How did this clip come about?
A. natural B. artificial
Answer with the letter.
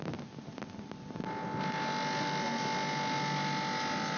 A